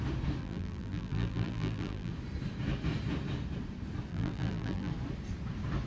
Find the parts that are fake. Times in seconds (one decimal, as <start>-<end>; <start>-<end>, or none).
0.4-2.1; 4.1-4.9